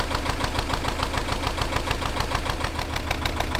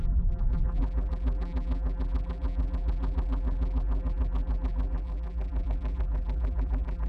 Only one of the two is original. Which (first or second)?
first